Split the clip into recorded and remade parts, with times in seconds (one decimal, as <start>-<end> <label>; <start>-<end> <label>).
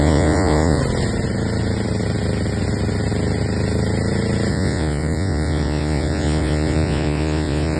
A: 0.0-0.8 remade; 0.8-4.5 recorded; 4.5-7.8 remade